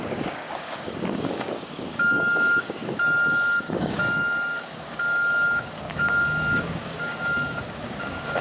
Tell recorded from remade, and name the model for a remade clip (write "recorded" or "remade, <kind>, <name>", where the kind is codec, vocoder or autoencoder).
remade, codec, DAC